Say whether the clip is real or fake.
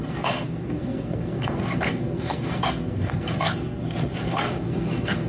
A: fake